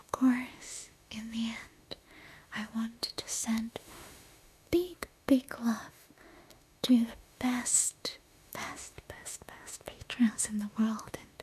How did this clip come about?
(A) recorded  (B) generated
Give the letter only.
B